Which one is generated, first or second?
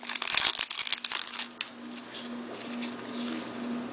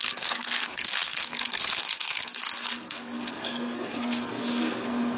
second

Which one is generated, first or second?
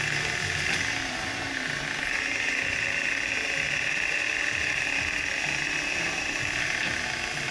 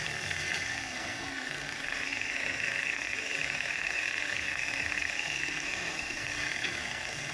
second